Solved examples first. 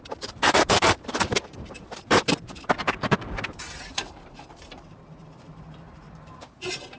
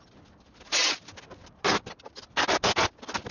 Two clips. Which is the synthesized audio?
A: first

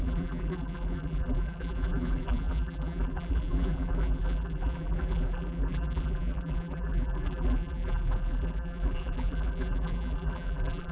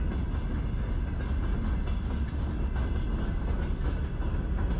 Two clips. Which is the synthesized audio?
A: first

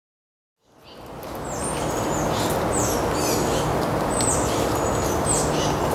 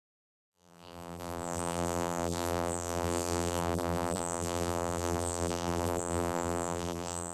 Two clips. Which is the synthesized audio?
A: second